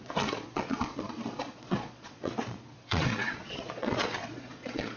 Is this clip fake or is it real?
fake